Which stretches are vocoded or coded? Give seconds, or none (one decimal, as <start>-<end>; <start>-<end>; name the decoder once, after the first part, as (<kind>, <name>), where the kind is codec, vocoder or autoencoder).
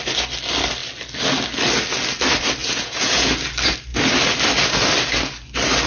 2.6-3.3 (vocoder, Vocos)